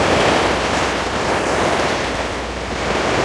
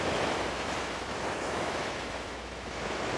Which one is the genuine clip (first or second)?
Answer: first